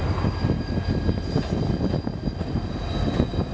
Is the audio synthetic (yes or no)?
no